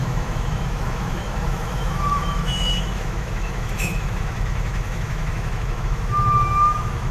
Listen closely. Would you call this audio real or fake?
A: fake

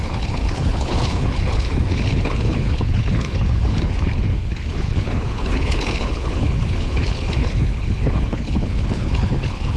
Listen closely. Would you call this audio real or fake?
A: fake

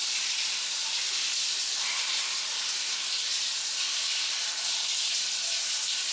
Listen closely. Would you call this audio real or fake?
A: real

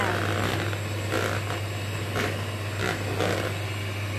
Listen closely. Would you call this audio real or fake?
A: real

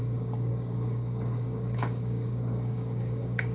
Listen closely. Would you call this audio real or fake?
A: fake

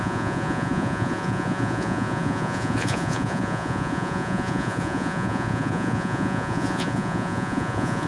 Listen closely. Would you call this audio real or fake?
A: fake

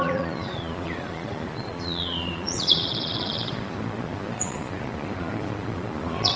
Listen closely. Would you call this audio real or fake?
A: fake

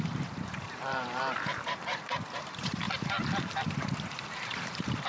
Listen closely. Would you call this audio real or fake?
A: fake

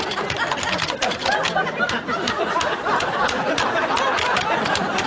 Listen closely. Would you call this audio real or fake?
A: real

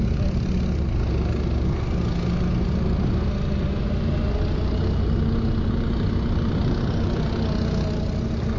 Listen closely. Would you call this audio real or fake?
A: real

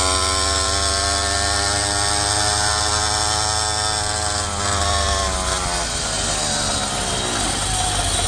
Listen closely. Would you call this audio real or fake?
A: real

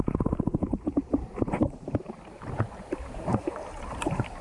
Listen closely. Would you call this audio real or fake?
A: fake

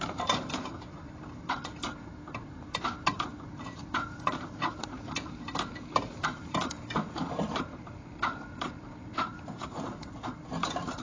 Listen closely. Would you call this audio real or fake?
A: fake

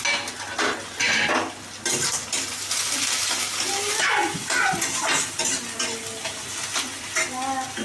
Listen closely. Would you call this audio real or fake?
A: real